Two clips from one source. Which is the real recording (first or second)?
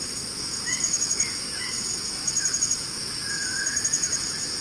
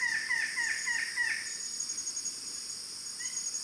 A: second